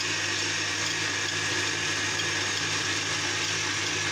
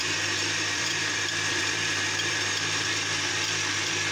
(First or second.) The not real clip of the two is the second